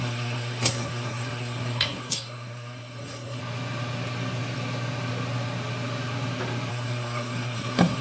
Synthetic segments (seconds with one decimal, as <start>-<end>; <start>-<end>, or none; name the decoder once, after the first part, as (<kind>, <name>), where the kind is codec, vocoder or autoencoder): 0.0-3.4 (codec, SNAC); 6.7-8.0